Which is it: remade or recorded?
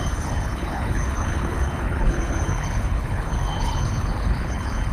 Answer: remade